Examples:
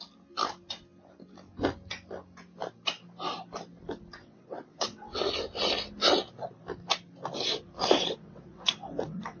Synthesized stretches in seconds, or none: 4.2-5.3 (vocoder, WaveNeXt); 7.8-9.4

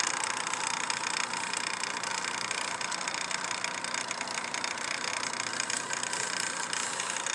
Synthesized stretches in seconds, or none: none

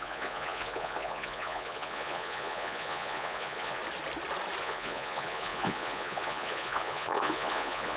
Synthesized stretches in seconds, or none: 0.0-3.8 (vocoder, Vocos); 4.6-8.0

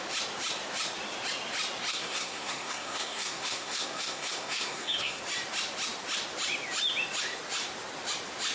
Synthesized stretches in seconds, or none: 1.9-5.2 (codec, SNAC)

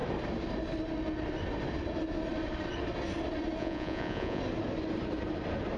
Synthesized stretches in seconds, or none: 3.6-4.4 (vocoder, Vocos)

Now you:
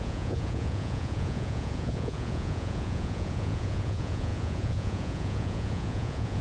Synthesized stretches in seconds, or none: 0.0-6.4 (vocoder, Vocos)

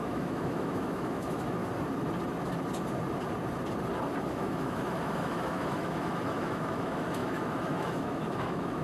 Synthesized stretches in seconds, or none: 0.0-1.6 (autoencoder, DAC-VAE); 4.3-8.8

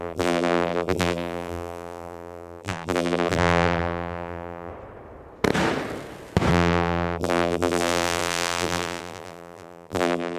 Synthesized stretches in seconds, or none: 0.0-4.7 (vocoder, BigVGAN v2); 6.5-10.4